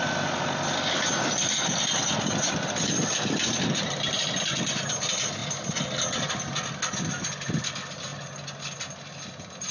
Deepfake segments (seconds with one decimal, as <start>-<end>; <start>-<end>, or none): none